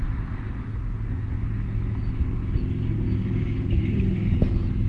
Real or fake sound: real